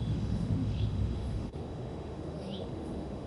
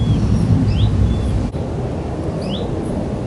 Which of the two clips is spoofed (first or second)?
first